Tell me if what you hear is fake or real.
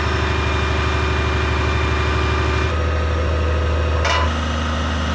real